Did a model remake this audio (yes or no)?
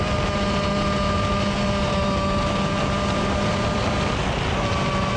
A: no